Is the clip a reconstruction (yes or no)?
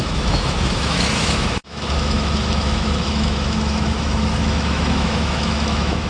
yes